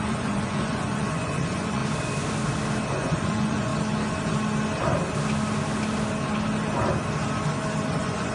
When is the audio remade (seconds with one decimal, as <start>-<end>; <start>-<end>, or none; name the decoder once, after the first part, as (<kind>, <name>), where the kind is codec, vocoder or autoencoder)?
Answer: 0.0-1.8 (vocoder, Vocos); 2.9-3.7; 7.9-8.3